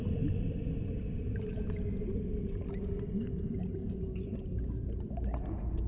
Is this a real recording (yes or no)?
yes